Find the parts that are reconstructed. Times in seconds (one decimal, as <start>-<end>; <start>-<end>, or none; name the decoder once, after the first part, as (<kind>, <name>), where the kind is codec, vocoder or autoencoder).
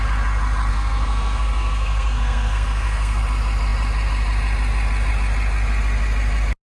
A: 0.7-3.2 (codec, SNAC)